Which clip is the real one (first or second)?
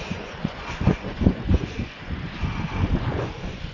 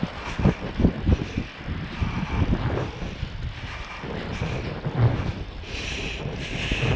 second